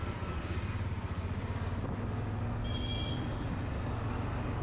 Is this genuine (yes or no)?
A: yes